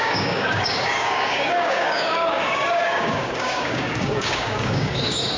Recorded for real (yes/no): no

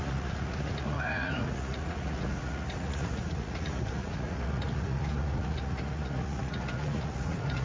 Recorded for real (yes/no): no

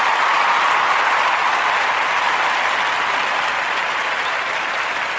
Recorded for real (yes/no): yes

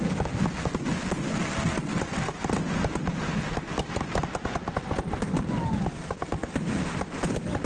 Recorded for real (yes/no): yes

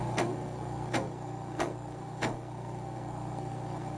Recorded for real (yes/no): no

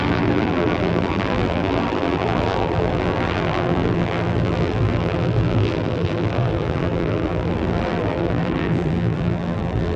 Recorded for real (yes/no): no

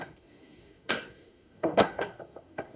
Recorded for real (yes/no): no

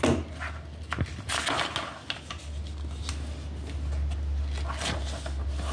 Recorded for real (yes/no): yes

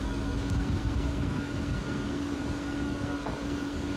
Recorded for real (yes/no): no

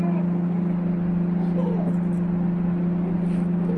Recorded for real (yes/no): yes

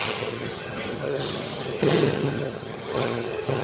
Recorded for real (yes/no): no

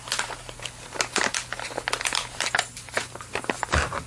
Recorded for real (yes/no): yes